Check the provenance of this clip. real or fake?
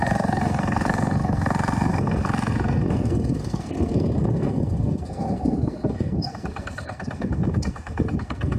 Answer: fake